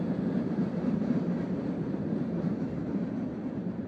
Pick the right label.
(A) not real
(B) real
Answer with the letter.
A